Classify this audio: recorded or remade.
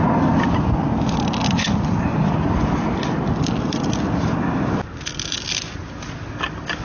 recorded